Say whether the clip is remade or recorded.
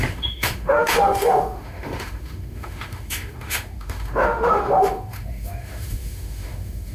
remade